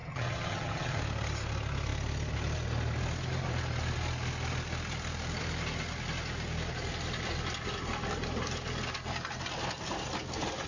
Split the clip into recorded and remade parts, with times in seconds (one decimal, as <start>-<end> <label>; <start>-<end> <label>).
0.0-1.0 remade; 1.0-10.7 recorded